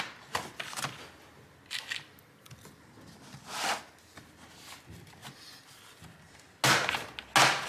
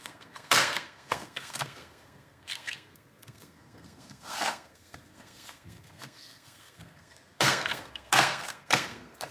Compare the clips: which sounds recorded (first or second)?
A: first